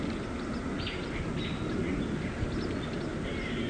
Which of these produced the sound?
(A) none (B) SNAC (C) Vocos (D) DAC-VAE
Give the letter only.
A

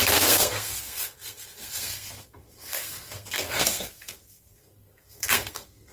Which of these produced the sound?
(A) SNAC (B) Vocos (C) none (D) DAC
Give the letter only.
A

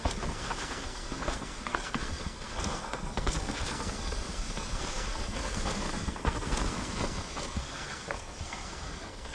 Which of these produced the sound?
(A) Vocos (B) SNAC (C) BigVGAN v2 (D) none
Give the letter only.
B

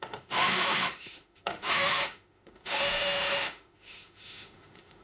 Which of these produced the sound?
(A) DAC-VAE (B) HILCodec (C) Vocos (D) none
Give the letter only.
A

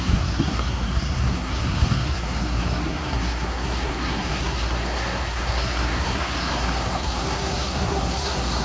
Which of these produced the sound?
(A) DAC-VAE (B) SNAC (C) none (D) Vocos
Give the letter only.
B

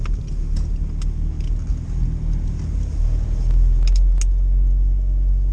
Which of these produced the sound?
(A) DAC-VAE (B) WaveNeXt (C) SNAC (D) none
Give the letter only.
D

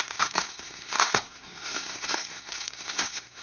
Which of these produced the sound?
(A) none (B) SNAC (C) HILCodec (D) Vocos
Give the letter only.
B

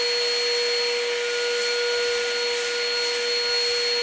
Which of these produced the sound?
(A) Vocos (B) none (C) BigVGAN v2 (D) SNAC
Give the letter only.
B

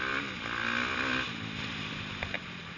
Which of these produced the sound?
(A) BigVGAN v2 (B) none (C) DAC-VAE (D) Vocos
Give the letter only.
B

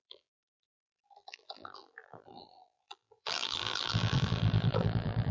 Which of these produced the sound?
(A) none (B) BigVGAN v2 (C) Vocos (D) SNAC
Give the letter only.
B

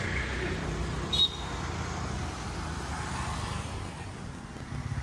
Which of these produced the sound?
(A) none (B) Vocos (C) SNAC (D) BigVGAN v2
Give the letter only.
A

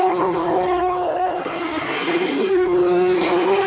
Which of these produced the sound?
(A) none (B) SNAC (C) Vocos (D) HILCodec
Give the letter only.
B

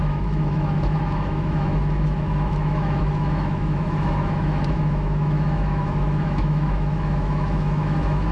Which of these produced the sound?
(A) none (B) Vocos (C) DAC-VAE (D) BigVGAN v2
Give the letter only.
C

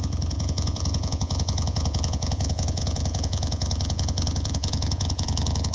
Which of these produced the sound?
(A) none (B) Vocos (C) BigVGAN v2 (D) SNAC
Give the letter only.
B